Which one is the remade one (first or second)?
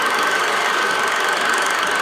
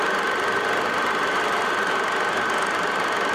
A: first